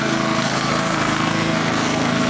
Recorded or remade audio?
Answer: remade